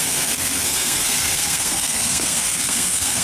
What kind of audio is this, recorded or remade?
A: remade